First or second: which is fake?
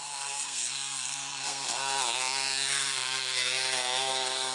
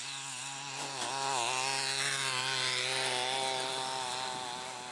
first